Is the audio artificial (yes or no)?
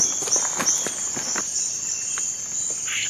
no